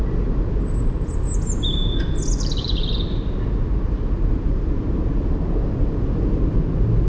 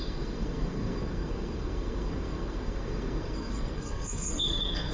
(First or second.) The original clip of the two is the first